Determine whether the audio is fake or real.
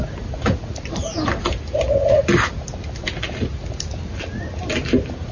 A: real